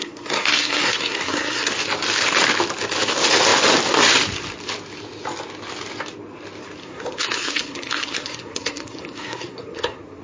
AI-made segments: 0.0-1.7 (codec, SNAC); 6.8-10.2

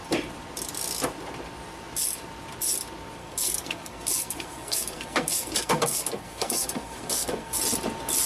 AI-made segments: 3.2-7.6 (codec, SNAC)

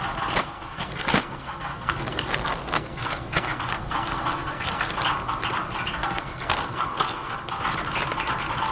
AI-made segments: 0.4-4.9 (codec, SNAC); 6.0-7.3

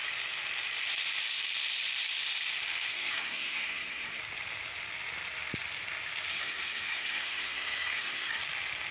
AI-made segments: 2.9-4.2 (codec, SNAC); 6.3-8.4

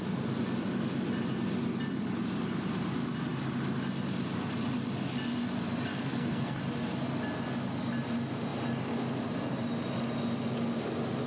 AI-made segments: 5.9-6.6 (codec, SNAC)

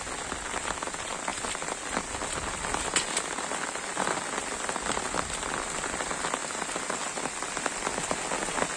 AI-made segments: none

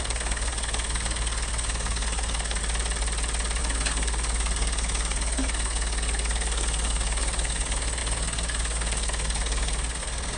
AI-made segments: 0.0-2.6 (codec, SNAC); 3.6-10.4